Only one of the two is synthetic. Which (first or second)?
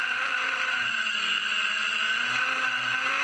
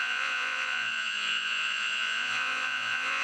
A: second